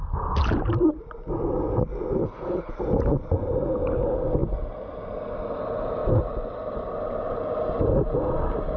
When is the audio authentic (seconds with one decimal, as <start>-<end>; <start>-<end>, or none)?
0.0-2.2; 2.7-8.8